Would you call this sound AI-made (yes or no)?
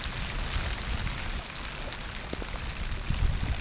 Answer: no